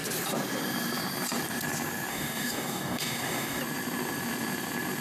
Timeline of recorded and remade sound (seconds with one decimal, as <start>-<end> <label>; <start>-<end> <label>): 0.0-2.1 recorded; 2.1-3.6 remade; 3.6-5.0 recorded